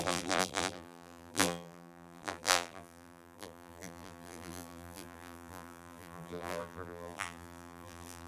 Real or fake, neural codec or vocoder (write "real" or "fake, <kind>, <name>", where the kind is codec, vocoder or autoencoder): fake, vocoder, BigVGAN v2